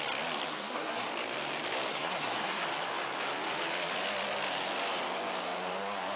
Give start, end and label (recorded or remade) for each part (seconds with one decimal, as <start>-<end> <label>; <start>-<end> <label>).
0.0-0.5 recorded; 0.5-1.1 remade; 1.1-1.9 recorded; 1.9-2.6 remade; 2.6-6.2 recorded